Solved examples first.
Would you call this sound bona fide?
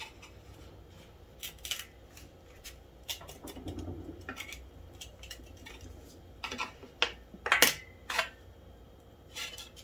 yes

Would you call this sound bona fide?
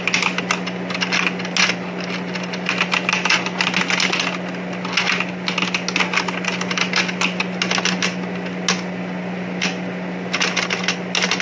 yes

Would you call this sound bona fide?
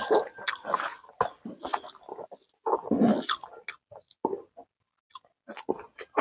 yes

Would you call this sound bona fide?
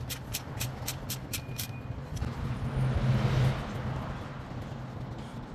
yes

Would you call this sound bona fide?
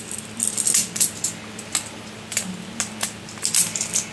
yes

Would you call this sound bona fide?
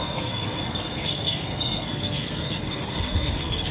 no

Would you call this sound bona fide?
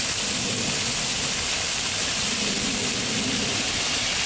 yes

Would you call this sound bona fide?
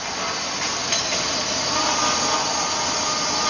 yes